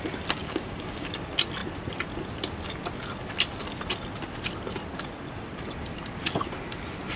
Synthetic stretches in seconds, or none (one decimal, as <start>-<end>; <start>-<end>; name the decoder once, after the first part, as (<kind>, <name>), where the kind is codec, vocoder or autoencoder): 0.4-1.1 (codec, DAC)